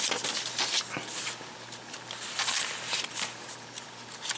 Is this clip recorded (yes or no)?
yes